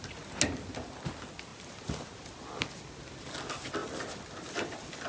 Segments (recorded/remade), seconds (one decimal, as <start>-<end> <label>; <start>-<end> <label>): 0.0-1.5 recorded; 1.5-3.0 remade; 3.0-3.8 recorded; 3.8-5.1 remade